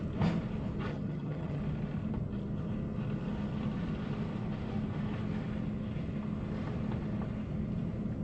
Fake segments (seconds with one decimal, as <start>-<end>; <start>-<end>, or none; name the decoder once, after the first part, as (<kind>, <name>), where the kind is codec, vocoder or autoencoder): 0.9-1.6 (vocoder, HiFi-GAN)